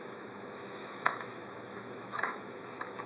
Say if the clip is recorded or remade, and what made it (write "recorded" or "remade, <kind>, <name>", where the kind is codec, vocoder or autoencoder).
remade, autoencoder, DAC-VAE